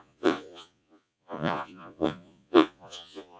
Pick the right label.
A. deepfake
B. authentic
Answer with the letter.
A